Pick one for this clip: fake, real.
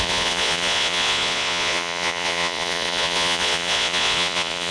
fake